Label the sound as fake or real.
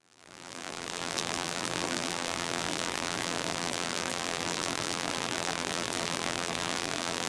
fake